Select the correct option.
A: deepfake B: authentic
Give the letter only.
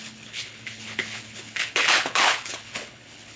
A